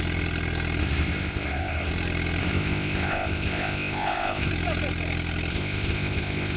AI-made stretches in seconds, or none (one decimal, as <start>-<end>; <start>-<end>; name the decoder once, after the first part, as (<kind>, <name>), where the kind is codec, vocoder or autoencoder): 0.8-1.9 (codec, ZipCodec); 2.4-4.5; 5.5-6.6